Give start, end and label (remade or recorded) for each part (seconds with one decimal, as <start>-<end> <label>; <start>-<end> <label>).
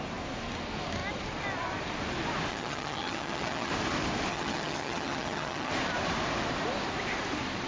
0.0-2.5 recorded; 2.5-3.7 remade; 3.7-4.3 recorded; 4.3-5.7 remade; 5.7-7.7 recorded